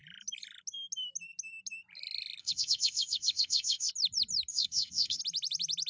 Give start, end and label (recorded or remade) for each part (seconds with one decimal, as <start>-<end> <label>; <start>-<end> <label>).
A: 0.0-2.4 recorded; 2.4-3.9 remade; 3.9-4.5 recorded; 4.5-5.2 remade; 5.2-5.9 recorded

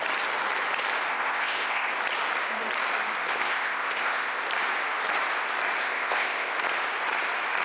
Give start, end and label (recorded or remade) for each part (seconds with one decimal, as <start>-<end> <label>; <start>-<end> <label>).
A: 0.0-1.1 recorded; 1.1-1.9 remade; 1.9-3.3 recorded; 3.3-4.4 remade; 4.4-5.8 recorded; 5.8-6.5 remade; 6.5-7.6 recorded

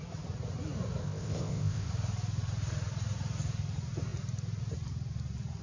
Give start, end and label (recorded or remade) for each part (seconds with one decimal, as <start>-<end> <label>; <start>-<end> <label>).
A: 0.0-1.0 recorded; 1.0-1.9 remade; 1.9-5.6 recorded